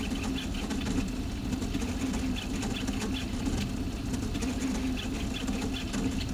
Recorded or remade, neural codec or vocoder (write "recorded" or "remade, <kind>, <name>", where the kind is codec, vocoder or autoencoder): recorded